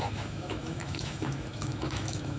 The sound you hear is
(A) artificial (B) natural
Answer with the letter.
A